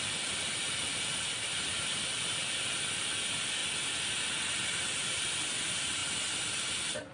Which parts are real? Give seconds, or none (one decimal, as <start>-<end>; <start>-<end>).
3.6-4.5

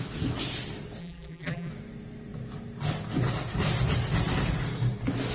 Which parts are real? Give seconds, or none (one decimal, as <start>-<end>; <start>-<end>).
0.0-1.0; 1.7-5.3

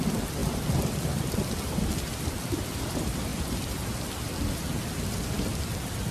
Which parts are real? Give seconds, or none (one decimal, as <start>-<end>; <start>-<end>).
3.3-5.6

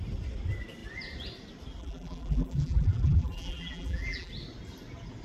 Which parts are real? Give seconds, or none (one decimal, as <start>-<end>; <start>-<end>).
0.0-1.8; 4.3-5.2

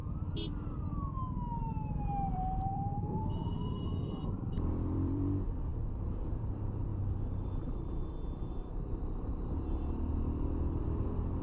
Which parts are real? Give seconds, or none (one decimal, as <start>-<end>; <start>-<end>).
0.0-2.3; 6.9-10.6